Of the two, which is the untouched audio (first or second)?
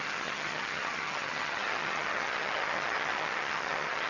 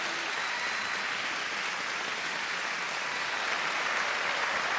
second